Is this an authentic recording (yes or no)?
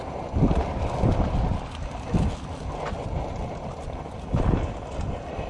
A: yes